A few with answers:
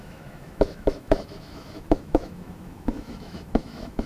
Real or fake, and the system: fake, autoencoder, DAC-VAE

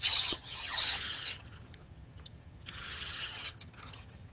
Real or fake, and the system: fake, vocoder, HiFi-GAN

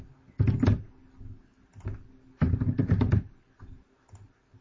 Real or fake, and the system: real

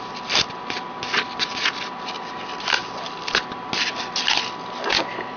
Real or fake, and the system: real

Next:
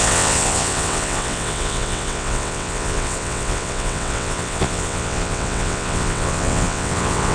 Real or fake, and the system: fake, vocoder, WaveNeXt